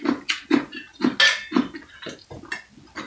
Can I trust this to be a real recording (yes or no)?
yes